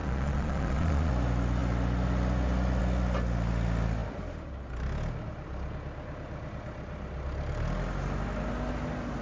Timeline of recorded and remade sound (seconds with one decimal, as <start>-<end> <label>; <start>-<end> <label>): 0.0-1.1 remade; 1.1-9.2 recorded

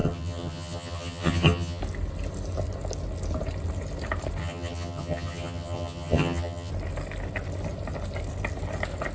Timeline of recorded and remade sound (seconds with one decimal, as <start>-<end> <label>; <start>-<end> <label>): 0.0-1.8 remade; 1.8-4.4 recorded; 4.4-6.7 remade; 6.7-9.1 recorded

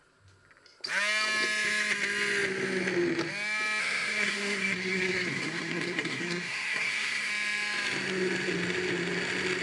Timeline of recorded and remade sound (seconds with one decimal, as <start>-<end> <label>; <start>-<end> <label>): 0.0-3.8 recorded; 3.8-7.3 remade; 7.3-9.6 recorded

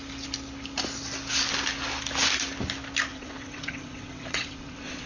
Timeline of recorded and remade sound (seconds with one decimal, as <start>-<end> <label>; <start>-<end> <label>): 0.0-3.1 recorded; 3.1-5.1 remade

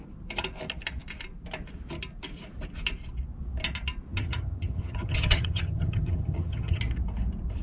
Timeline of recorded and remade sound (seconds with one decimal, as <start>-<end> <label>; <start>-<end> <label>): 0.0-4.1 recorded; 4.1-6.8 remade; 6.8-7.6 recorded

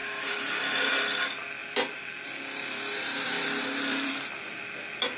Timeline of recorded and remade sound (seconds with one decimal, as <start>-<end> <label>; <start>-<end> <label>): 0.0-0.5 remade; 0.5-1.6 recorded; 1.6-4.6 remade; 4.6-5.2 recorded

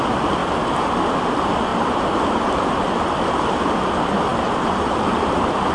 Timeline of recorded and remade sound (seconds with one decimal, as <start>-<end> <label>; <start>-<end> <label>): 0.0-1.7 recorded; 1.7-2.4 remade; 2.4-4.3 recorded; 4.3-5.0 remade; 5.0-5.7 recorded

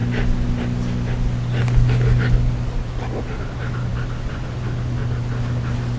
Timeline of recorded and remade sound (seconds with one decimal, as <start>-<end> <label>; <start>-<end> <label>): 0.0-6.0 recorded